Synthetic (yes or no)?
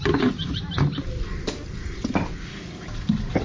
no